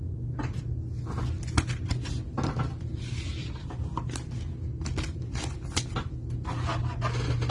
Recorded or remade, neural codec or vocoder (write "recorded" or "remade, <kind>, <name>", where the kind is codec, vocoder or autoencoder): recorded